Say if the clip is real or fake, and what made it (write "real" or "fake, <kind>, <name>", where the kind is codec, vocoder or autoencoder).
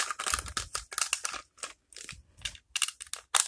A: real